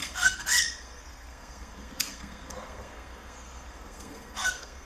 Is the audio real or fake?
fake